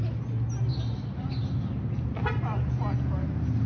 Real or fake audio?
real